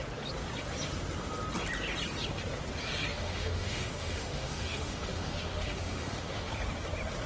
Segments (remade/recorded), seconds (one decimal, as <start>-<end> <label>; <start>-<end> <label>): 0.0-3.1 recorded; 3.1-6.5 remade; 6.5-7.3 recorded